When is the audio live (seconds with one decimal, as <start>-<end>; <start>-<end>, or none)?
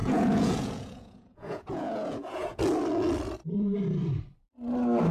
2.6-5.1